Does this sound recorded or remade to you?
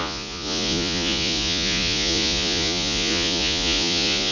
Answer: remade